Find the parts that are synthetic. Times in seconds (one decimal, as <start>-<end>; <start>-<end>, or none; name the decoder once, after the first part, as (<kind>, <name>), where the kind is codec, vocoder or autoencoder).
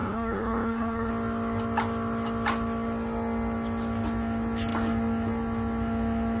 0.0-1.1 (codec, SNAC)